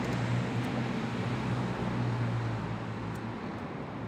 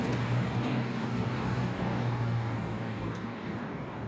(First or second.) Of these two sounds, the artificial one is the second